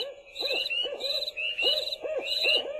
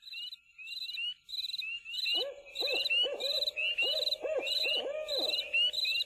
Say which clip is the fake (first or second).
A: first